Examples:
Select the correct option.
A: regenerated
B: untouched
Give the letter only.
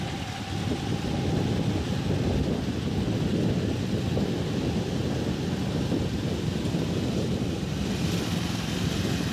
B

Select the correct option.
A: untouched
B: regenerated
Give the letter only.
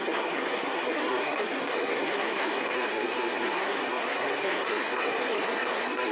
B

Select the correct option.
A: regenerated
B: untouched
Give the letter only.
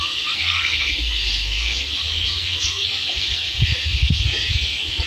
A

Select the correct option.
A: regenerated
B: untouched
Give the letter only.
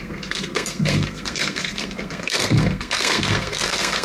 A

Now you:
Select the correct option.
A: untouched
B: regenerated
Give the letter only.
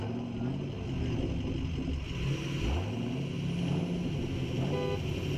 A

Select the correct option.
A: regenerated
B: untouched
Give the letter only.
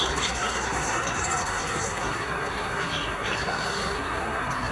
A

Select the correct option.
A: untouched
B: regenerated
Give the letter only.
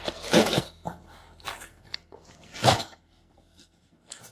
B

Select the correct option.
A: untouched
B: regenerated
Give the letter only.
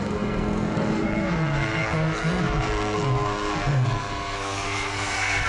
B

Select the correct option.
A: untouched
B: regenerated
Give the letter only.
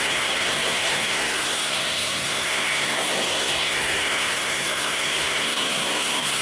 B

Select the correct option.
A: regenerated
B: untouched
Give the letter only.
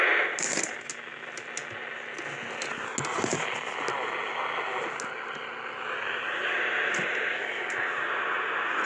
B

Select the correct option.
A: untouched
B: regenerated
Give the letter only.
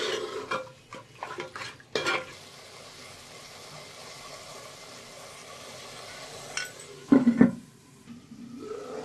A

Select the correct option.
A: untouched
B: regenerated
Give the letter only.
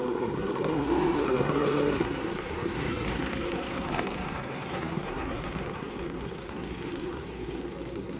B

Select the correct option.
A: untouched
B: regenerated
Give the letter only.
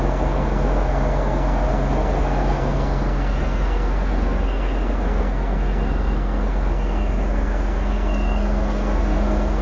B